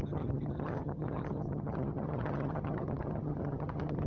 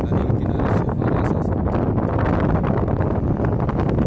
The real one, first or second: second